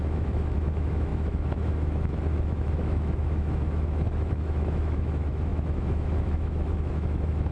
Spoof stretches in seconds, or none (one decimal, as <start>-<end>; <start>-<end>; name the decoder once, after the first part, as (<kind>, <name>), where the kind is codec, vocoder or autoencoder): 0.0-7.5 (autoencoder, DAC-VAE)